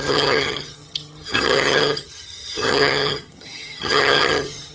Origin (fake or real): fake